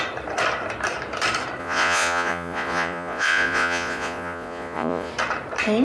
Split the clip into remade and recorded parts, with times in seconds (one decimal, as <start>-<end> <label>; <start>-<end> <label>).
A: 0.0-1.6 recorded; 1.6-5.1 remade; 5.1-5.8 recorded